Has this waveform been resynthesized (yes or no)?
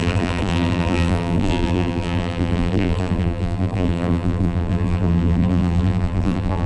yes